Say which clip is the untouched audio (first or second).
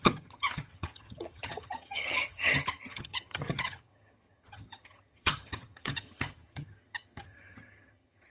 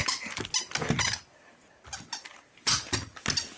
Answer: second